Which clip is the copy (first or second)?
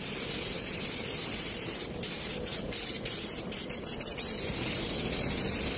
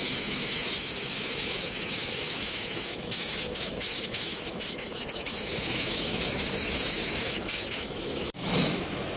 second